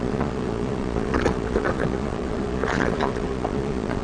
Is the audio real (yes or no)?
no